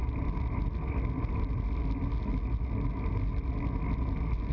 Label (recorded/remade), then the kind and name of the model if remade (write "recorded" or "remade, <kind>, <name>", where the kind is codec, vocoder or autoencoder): recorded